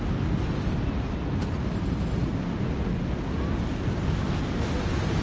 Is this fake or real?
real